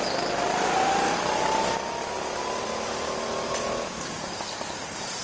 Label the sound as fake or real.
real